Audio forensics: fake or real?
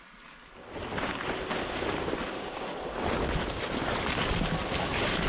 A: real